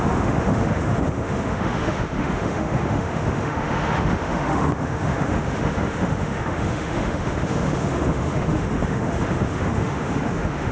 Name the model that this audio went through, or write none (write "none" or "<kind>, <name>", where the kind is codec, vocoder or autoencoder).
autoencoder, DAC-VAE